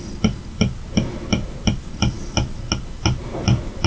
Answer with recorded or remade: recorded